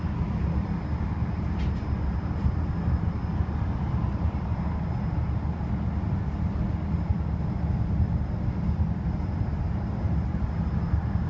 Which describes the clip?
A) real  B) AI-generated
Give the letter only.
A